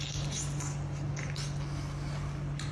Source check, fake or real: real